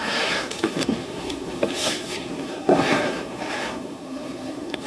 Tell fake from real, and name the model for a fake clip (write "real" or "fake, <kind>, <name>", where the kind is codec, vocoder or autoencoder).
fake, codec, SNAC